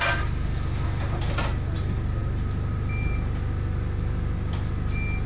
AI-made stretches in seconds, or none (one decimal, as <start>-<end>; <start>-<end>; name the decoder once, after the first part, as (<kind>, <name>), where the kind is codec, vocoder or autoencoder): none